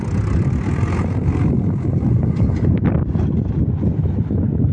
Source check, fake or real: real